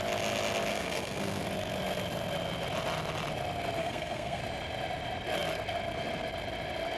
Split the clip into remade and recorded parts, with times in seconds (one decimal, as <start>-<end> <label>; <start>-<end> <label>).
0.0-0.7 recorded; 0.7-1.4 remade; 1.4-3.8 recorded; 3.8-4.4 remade; 4.4-7.0 recorded